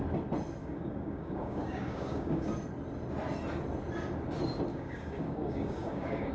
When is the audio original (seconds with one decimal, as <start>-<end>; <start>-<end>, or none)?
0.0-0.6; 2.5-4.7